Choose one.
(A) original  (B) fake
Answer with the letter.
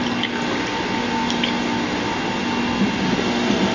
A